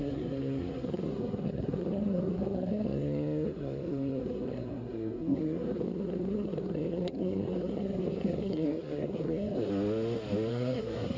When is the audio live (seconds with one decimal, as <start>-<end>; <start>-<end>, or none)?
9.7-10.5